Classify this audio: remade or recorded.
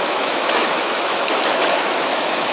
remade